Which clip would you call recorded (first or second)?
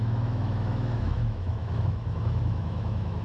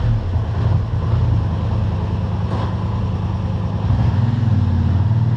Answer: second